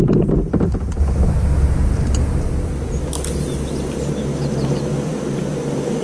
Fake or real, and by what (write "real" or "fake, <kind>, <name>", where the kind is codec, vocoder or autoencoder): real